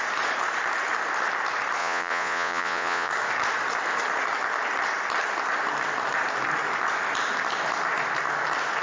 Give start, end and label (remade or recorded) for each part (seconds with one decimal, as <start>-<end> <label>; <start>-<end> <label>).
0.0-1.8 recorded; 1.8-3.1 remade; 3.1-8.8 recorded